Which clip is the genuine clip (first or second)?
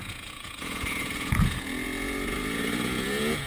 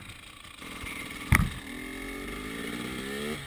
second